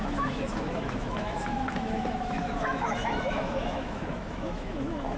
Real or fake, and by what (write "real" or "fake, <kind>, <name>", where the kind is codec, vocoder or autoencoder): fake, autoencoder, DAC-VAE